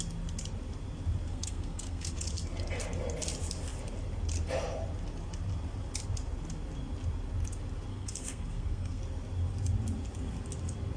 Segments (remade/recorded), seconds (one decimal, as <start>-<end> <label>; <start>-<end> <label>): 0.0-1.3 recorded; 1.3-2.1 remade; 2.1-7.9 recorded; 7.9-9.0 remade; 9.0-11.0 recorded